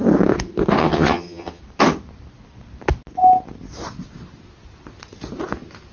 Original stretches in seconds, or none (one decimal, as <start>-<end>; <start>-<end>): 0.0-0.8; 1.6-5.9